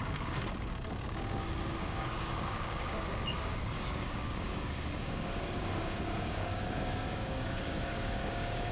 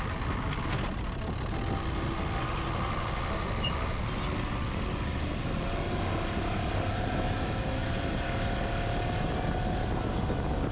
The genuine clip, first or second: second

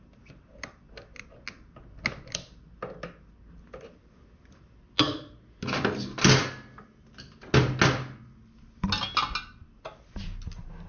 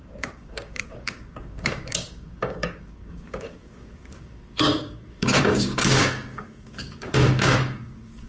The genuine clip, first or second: first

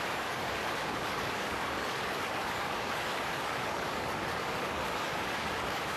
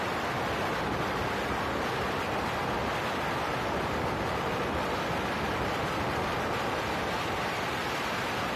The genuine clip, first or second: second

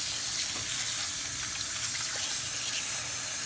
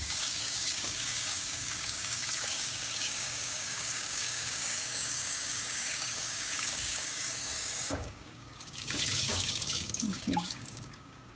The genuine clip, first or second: first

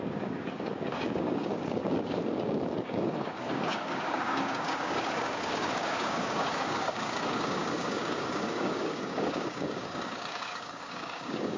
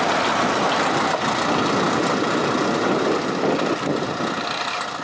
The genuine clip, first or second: second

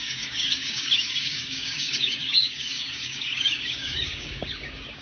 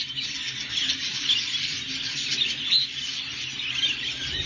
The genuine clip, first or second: second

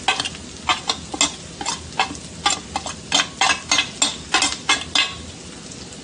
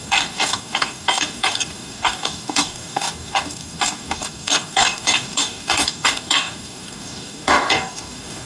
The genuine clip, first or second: first